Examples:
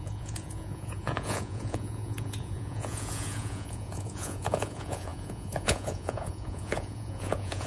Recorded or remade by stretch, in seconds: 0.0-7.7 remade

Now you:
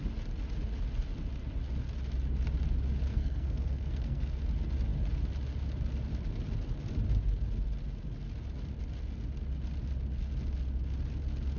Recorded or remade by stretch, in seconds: 0.0-3.1 recorded; 3.1-4.4 remade; 4.4-11.6 recorded